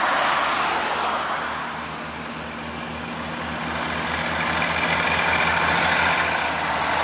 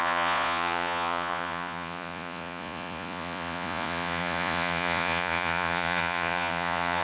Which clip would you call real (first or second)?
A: first